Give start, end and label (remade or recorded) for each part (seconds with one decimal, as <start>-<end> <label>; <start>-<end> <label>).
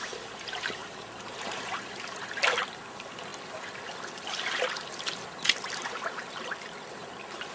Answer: 0.0-0.8 recorded; 0.8-1.8 remade; 1.8-7.5 recorded